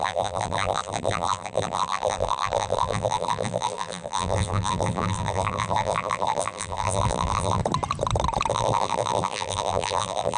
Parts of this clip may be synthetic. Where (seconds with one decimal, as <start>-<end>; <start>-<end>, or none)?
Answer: 0.0-7.6; 8.5-10.4